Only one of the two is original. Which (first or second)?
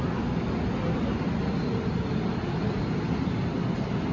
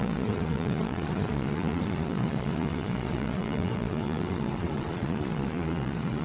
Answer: first